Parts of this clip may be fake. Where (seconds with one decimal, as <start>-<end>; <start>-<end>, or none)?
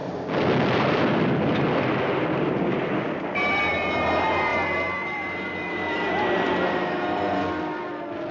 none